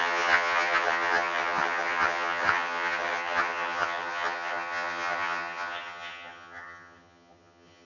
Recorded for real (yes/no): no